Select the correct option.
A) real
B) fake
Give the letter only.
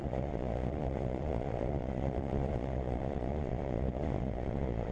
B